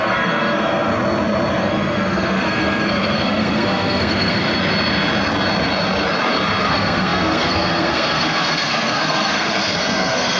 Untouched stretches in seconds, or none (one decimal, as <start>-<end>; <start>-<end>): 0.9-1.6; 4.5-6.6